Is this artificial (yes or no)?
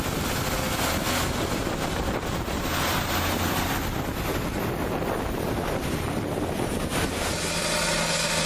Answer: no